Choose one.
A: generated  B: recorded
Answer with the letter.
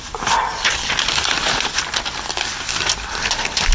B